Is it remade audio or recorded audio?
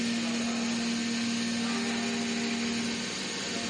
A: recorded